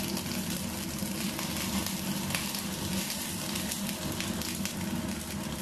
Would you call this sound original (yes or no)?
yes